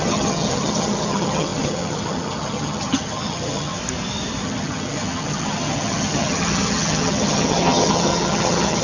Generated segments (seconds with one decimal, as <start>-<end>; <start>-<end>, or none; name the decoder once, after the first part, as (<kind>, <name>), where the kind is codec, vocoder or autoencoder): 0.0-3.8 (vocoder, HiFi-GAN); 4.4-8.8